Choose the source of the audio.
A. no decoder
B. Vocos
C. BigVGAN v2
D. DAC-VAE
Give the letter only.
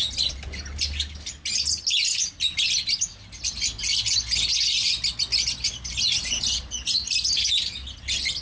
A